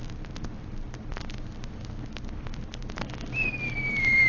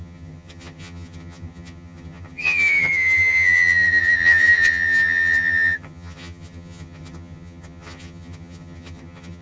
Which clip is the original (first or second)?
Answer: first